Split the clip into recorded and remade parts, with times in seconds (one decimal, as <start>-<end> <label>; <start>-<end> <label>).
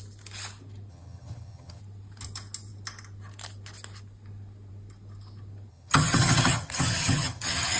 0.0-0.9 recorded; 0.9-1.8 remade; 1.8-5.7 recorded; 5.7-7.8 remade